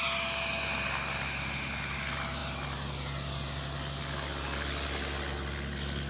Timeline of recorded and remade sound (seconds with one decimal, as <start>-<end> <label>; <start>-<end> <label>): 0.0-6.1 recorded